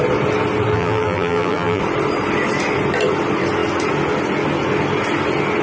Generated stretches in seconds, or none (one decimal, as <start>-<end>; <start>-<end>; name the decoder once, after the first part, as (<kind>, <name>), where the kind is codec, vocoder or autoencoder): 0.7-1.8 (vocoder, BigVGAN v2)